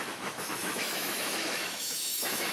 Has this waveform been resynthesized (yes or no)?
yes